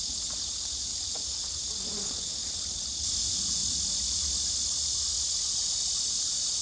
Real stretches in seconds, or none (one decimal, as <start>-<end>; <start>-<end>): 2.4-3.2; 3.6-6.6

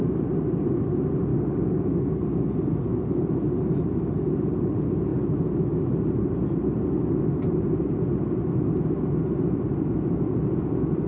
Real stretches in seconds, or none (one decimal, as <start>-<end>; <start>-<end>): 0.0-1.3; 2.2-11.1

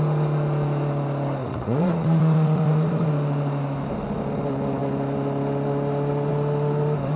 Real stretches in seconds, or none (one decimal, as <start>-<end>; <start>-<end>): 0.0-1.4; 3.1-7.2